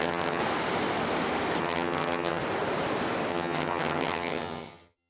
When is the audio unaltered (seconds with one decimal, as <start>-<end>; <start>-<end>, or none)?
0.4-1.6; 2.4-3.3